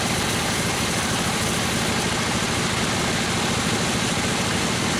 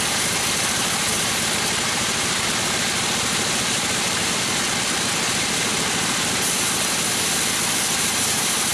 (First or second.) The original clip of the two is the first